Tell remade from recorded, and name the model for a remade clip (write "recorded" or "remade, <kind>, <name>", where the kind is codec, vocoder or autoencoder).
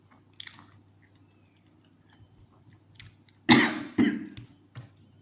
recorded